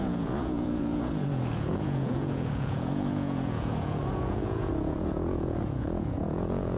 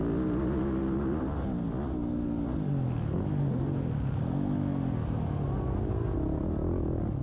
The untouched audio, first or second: second